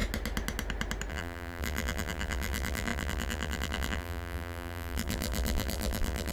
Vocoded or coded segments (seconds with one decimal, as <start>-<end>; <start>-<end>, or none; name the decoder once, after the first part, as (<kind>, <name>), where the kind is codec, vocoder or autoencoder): 1.1-6.3 (vocoder, BigVGAN v2)